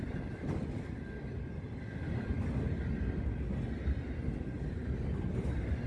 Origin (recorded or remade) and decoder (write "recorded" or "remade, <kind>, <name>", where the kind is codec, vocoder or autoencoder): recorded